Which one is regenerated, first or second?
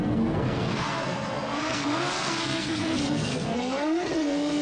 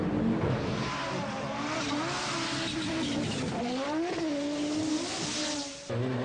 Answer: first